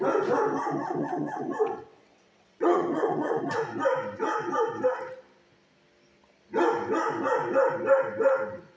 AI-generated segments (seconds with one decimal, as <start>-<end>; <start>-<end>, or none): 0.8-3.4